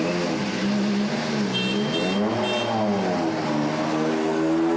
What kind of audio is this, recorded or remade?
recorded